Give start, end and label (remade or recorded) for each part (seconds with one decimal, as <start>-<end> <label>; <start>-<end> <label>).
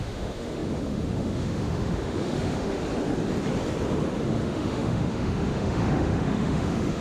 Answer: 0.0-2.8 remade; 2.8-4.4 recorded; 4.4-7.0 remade